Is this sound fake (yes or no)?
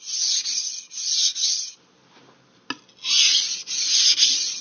no